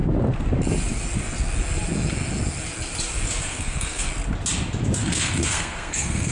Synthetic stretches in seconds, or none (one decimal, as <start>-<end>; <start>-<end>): 3.5-4.1; 5.0-6.3